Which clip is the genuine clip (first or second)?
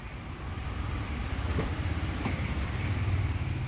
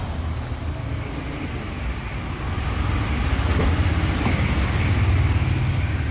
second